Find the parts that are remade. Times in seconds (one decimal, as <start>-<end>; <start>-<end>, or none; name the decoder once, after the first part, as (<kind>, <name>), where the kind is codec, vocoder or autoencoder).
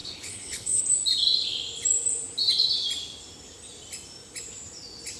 0.0-0.8 (codec, HILCodec)